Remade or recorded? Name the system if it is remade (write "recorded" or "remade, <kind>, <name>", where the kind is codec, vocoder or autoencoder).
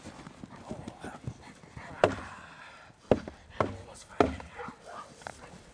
recorded